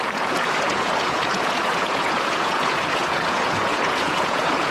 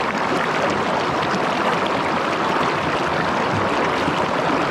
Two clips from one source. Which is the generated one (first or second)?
first